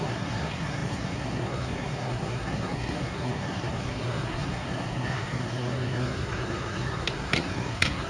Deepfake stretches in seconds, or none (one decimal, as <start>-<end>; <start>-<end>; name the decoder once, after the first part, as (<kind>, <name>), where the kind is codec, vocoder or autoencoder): 0.0-8.1 (codec, SNAC)